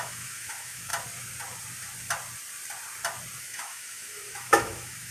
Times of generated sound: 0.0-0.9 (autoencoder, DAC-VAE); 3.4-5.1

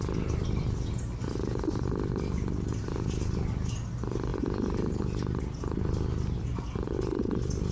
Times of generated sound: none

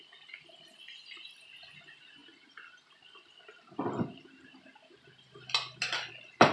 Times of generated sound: none